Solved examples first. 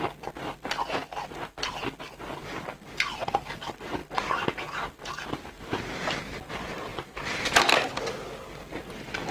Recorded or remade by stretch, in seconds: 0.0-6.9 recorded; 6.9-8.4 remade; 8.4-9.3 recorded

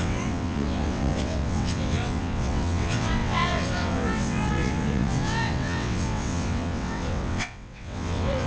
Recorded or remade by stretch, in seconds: 0.0-8.5 remade

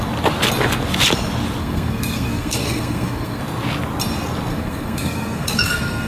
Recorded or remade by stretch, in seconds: 0.0-1.6 recorded; 1.6-3.4 remade; 3.4-4.5 recorded; 4.5-6.1 remade

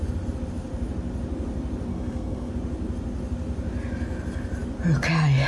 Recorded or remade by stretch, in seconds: 0.0-1.9 recorded; 1.9-2.5 remade; 2.5-5.5 recorded

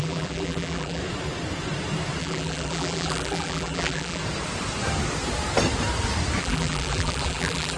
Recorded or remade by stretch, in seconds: 0.0-1.0 remade; 1.0-2.2 recorded; 2.2-4.2 remade; 4.2-6.4 recorded; 6.4-7.8 remade

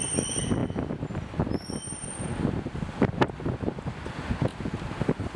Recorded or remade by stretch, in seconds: 0.0-5.4 recorded